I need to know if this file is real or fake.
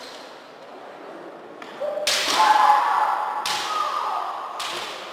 real